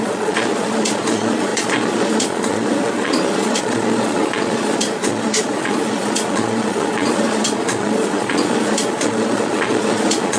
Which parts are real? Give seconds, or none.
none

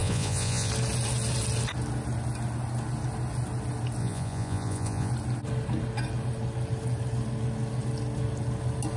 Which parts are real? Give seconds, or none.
0.7-4.0; 5.1-9.0